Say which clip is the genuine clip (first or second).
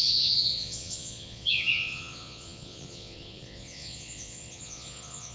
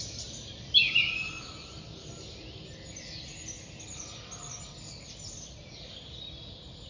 second